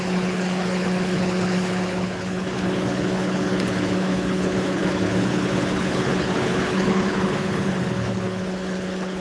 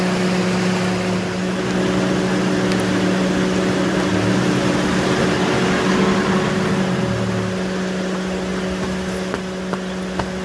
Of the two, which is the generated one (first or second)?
first